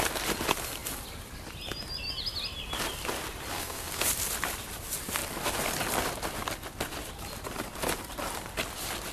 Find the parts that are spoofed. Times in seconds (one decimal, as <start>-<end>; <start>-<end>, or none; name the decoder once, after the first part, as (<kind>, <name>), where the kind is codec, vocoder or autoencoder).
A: 3.5-4.0 (codec, SNAC)